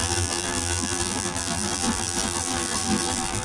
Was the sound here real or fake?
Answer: fake